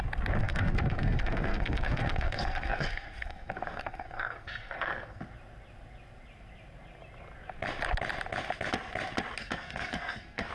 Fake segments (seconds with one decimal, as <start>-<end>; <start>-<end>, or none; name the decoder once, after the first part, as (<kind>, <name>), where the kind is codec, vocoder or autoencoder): 0.4-5.2 (codec, SNAC); 9.4-10.5